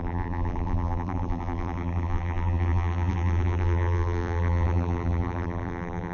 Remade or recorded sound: remade